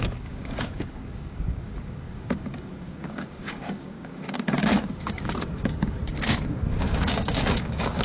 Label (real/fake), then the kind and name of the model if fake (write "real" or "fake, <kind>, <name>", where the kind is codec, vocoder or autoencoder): fake, codec, DAC